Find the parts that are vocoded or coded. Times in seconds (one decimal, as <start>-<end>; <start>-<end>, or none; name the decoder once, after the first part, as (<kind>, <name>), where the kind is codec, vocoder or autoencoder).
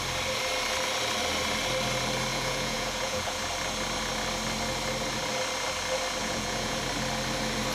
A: 2.3-3.4 (vocoder, Vocos); 6.2-6.8